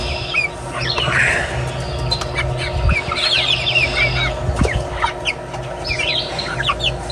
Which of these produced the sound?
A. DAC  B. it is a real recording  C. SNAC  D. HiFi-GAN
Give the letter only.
B